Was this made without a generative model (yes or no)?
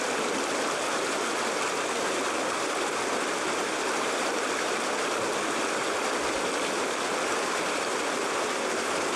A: yes